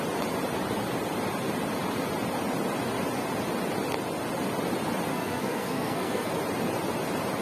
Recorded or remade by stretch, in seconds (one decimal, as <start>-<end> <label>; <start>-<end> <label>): 0.0-5.1 recorded; 5.1-6.3 remade; 6.3-7.4 recorded